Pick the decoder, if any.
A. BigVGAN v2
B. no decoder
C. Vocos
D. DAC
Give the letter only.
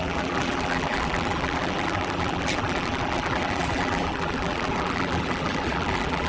A